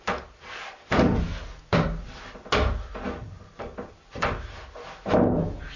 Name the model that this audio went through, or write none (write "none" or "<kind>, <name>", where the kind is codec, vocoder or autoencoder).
none